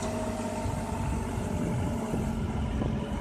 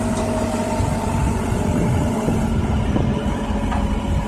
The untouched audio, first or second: first